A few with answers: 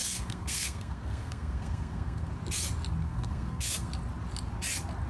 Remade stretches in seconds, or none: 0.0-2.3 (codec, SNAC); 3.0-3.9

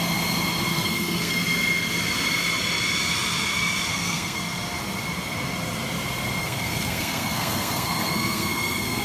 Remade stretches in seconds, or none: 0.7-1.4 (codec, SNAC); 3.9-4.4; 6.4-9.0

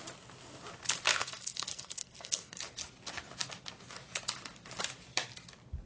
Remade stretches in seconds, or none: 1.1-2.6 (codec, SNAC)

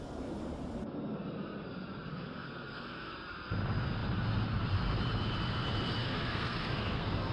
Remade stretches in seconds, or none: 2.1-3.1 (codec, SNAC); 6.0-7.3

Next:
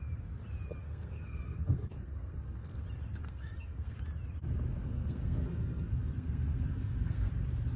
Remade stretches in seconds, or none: 0.8-2.8 (codec, SNAC); 3.2-4.0; 4.8-7.3

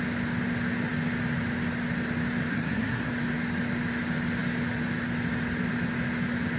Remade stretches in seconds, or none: 2.5-3.1 (codec, SNAC)

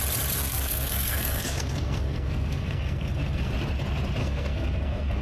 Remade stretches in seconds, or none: 0.4-3.5 (codec, SNAC); 4.2-5.2